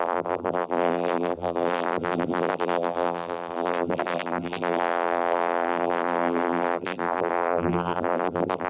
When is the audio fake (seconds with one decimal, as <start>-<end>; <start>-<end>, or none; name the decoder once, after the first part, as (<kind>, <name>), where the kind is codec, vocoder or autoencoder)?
0.0-8.7 (vocoder, BigVGAN v2)